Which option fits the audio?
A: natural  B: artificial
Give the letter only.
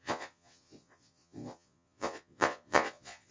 B